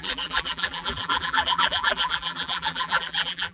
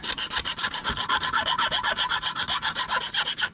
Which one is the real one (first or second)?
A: second